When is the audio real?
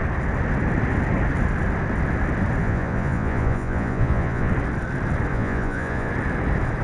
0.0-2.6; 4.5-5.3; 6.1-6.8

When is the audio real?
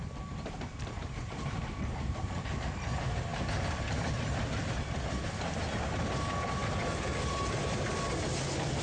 0.0-8.8